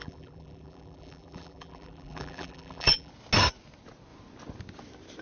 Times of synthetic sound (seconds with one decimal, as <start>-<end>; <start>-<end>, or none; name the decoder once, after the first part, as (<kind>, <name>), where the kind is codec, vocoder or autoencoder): 0.0-3.1 (vocoder, BigVGAN v2)